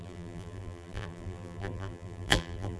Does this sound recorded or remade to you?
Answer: remade